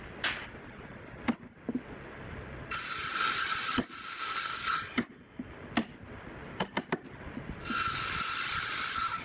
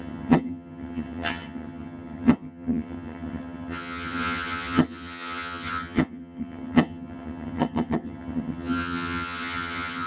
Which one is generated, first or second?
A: second